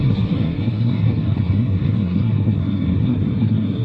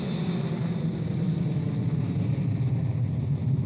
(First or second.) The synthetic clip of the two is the first